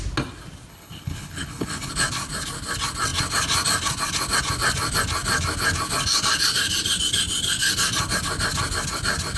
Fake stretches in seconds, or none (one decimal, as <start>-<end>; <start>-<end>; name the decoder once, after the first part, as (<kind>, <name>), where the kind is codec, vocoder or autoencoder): 0.7-1.9 (codec, HILCodec)